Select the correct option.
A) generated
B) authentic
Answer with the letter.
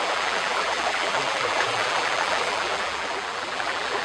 A